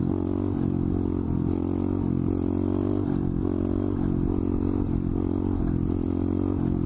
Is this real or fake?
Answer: real